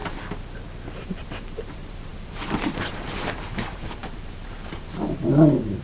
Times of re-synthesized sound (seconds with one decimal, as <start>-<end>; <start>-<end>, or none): 1.0-5.8